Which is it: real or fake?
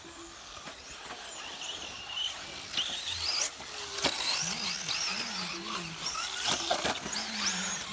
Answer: real